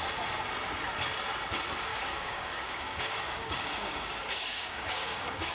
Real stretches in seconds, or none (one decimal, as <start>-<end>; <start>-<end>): 0.0-1.9

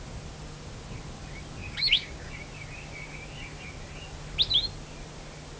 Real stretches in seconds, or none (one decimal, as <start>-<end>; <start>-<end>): 0.0-1.6; 2.3-5.6

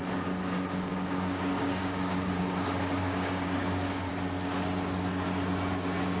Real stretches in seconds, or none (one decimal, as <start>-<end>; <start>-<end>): 0.0-0.4; 4.1-6.2